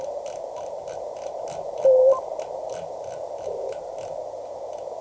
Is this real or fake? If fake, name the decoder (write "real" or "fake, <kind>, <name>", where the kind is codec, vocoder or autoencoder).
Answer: real